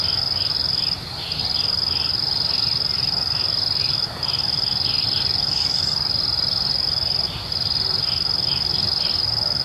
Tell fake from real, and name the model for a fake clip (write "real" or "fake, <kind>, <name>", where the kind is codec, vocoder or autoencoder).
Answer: real